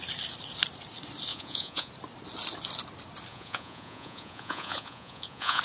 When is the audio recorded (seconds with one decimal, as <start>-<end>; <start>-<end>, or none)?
0.0-1.3; 1.9-3.3